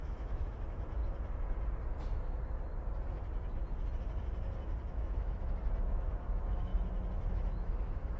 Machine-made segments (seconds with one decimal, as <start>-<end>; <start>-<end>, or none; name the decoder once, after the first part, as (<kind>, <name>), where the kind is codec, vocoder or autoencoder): 0.0-1.0 (autoencoder, DAC-VAE); 5.0-6.7; 7.3-8.2